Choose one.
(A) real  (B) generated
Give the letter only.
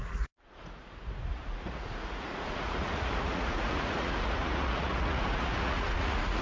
B